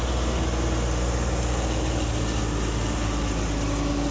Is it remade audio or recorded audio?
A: recorded